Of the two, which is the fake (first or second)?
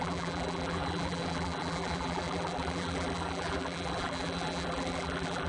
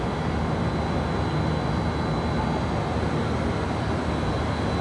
first